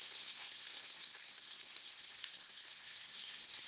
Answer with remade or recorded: remade